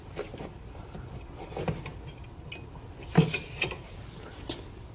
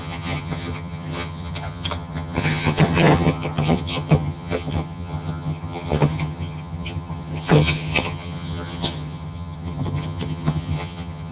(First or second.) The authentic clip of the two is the first